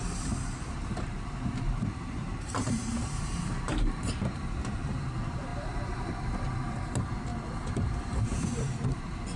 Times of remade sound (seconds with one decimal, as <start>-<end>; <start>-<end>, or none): 0.0-7.3; 7.8-9.4